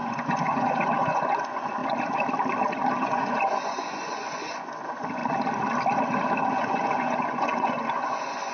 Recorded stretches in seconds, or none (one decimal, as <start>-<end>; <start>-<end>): 1.8-2.9; 5.2-6.5